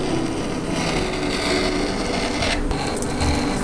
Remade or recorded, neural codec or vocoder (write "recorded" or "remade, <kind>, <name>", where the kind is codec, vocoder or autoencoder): recorded